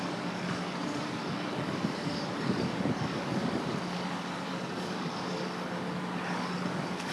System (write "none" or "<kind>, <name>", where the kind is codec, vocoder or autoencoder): codec, DAC